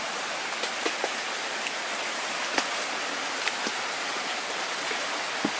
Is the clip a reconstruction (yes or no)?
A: no